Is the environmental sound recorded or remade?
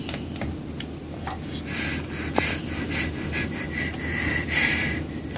recorded